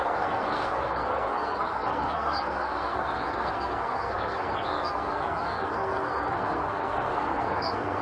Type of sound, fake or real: fake